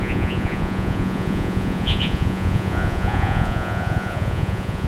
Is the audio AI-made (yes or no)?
yes